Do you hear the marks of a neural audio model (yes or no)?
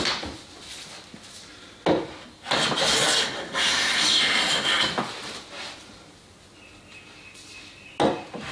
no